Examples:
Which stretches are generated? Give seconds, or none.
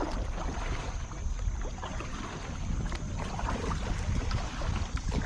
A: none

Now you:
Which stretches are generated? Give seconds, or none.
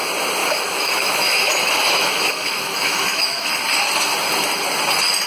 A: 0.4-3.5 (autoencoder, DAC-VAE)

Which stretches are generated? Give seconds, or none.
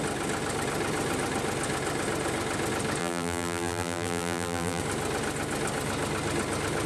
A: 3.0-4.8 (vocoder, BigVGAN v2)